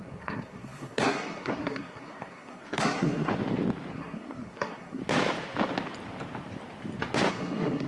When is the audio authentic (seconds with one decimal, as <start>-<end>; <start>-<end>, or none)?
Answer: 3.3-3.9; 5.0-7.3